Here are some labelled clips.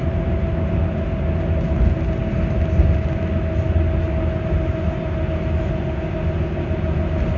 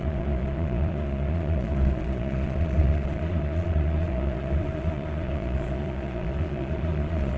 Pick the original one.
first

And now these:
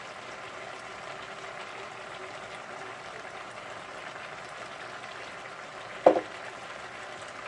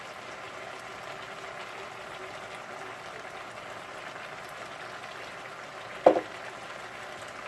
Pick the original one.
second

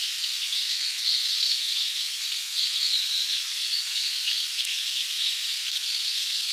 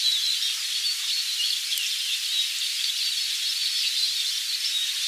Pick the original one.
second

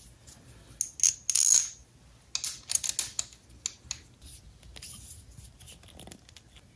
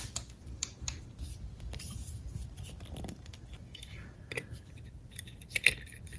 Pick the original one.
first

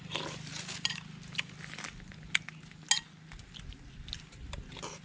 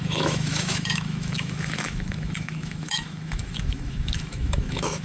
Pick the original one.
first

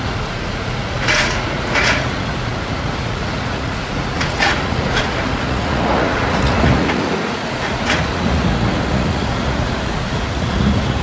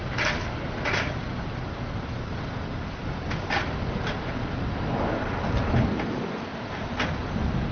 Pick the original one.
second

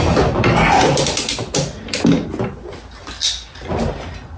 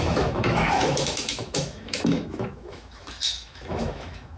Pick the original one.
first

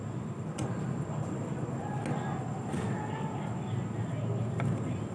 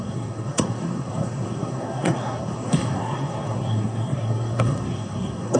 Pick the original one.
first